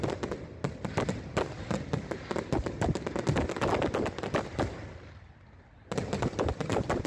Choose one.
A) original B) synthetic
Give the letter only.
A